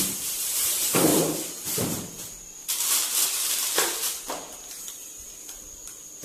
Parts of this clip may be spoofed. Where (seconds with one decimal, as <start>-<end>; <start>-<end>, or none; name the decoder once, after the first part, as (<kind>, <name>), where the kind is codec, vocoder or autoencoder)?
0.0-1.1 (vocoder, BigVGAN v2); 4.8-6.2